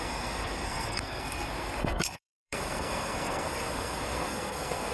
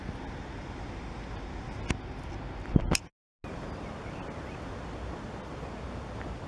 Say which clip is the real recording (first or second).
second